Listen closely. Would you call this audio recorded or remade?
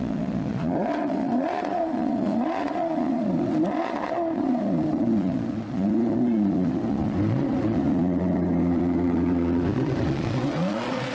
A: remade